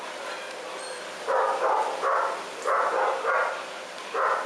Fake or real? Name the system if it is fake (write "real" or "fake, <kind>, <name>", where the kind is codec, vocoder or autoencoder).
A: real